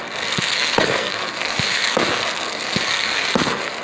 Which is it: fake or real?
fake